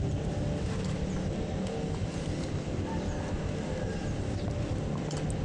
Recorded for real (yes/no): yes